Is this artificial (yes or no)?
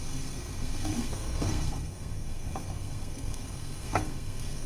yes